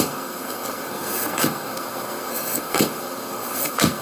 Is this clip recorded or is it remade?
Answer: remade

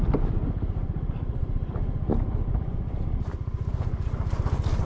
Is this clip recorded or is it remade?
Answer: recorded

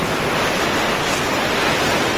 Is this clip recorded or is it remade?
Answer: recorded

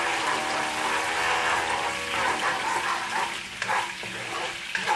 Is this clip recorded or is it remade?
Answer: recorded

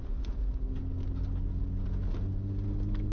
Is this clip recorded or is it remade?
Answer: recorded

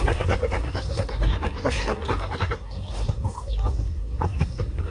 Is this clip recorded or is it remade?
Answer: remade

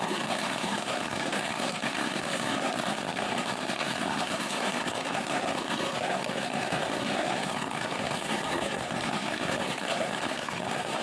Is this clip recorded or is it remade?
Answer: remade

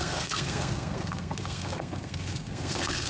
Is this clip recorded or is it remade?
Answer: remade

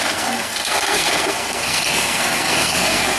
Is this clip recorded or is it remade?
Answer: remade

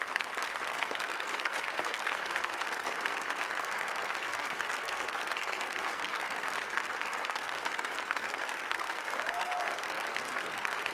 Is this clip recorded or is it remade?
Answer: remade